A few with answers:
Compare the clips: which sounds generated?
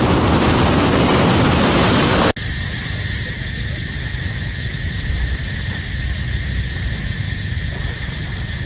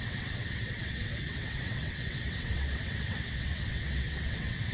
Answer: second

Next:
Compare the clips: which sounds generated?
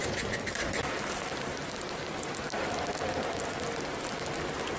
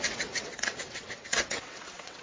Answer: second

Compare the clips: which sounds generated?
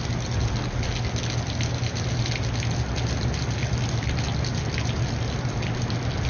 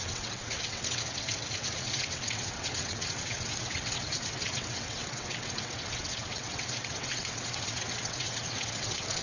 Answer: second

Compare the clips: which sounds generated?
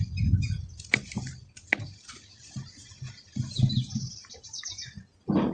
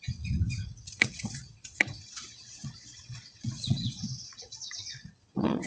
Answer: second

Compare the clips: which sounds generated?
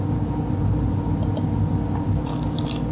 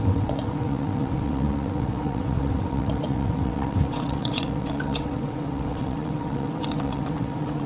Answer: second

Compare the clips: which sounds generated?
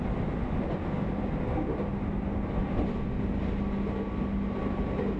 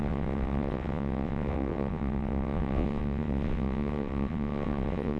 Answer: second